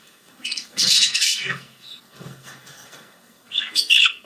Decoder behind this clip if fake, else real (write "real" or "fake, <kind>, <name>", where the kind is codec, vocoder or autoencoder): fake, codec, SNAC